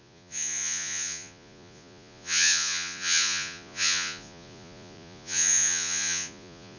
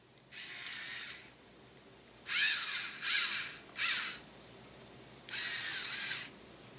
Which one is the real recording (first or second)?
second